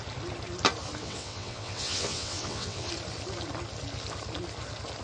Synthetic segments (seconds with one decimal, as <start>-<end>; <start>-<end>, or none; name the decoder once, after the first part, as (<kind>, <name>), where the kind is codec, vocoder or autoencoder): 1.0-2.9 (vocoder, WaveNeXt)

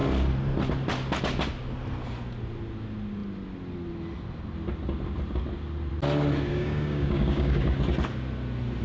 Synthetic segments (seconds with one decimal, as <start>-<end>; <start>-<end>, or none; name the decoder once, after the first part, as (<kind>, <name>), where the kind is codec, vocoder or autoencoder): 6.5-7.8 (codec, DAC)

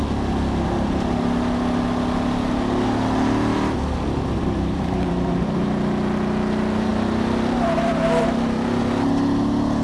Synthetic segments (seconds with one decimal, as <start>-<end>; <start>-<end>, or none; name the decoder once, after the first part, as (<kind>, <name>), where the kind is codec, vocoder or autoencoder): 3.5-5.3 (vocoder, BigVGAN v2); 6.9-8.8

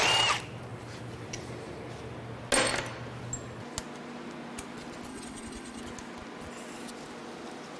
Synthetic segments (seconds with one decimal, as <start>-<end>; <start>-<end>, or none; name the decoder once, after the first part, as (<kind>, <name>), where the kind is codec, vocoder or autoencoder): 5.1-5.8 (vocoder, WaveNeXt)

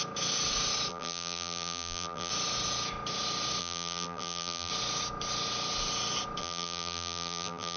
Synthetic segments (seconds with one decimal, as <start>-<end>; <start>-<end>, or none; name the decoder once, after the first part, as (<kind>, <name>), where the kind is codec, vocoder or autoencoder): 0.9-2.3 (vocoder, BigVGAN v2); 3.6-4.7; 6.4-7.8

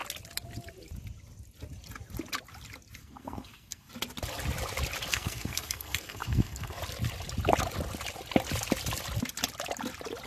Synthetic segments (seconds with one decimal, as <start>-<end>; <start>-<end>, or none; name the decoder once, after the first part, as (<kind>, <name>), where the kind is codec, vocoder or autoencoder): 3.0-3.9 (codec, SNAC); 5.1-6.8